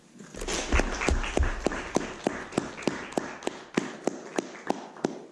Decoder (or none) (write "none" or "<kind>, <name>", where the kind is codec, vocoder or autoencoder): none